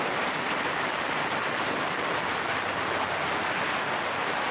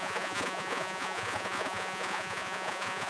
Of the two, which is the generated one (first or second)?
second